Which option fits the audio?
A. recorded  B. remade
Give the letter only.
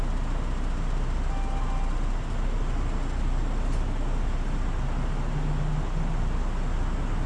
A